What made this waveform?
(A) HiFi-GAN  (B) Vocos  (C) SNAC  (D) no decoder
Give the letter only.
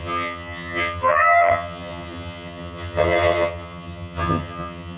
A